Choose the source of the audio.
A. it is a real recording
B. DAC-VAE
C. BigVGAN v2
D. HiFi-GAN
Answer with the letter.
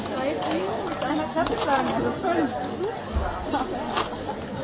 A